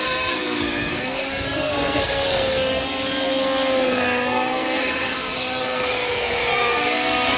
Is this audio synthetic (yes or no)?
yes